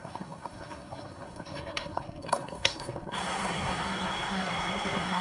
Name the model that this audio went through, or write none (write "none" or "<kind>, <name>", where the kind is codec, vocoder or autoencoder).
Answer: codec, SNAC